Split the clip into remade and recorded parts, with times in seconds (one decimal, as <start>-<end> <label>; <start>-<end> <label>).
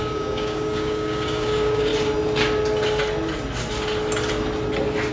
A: 0.0-1.9 remade; 1.9-5.1 recorded